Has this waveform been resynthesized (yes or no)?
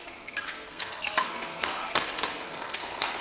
yes